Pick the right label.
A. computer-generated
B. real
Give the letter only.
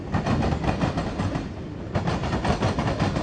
B